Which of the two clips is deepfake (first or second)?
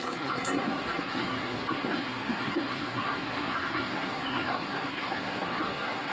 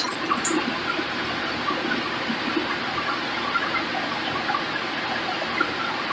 first